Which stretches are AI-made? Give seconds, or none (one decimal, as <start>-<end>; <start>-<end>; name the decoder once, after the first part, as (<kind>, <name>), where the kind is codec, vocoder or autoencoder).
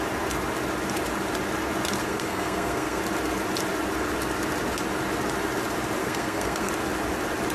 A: 2.0-3.0 (codec, SNAC); 6.0-6.7